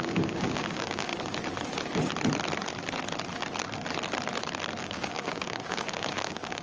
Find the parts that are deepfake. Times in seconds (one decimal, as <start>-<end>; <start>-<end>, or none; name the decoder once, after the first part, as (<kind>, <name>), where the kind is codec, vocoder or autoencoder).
0.0-1.1 (codec, DAC); 4.8-6.6